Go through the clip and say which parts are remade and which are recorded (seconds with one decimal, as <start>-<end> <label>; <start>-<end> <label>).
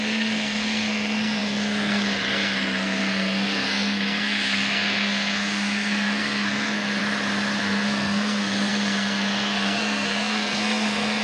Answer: 0.0-7.0 remade; 7.0-7.6 recorded; 7.6-11.2 remade